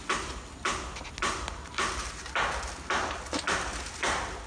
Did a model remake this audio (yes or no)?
no